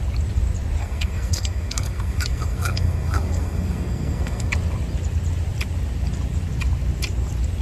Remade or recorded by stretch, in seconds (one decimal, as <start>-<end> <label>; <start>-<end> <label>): 0.0-0.8 recorded; 0.8-4.5 remade; 4.5-7.6 recorded